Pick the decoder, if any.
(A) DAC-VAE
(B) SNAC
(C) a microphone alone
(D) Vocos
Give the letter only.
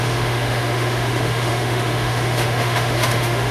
A